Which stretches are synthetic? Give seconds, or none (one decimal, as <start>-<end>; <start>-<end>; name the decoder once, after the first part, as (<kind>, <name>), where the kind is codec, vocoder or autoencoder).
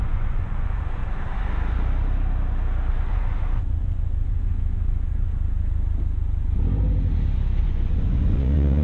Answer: 0.0-1.0 (vocoder, Vocos); 2.9-5.3; 7.6-8.8